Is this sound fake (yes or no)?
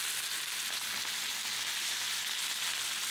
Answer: no